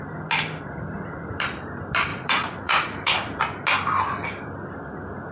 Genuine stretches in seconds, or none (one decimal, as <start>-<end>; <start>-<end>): 0.0-2.1; 3.4-5.3